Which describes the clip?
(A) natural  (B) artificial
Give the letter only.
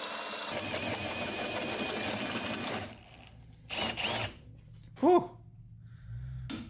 A